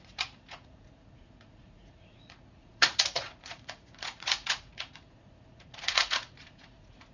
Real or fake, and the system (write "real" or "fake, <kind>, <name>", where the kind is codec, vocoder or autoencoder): fake, vocoder, Vocos